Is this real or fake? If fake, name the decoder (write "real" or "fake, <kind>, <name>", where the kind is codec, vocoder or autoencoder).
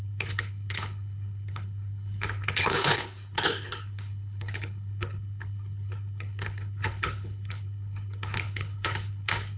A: fake, codec, HILCodec